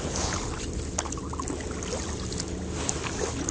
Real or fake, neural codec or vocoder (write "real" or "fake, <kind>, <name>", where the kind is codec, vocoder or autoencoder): real